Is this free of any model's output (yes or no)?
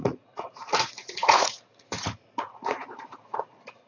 no